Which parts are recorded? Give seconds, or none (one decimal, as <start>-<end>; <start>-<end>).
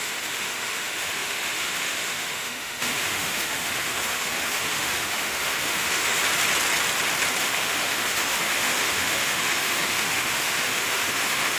6.2-7.4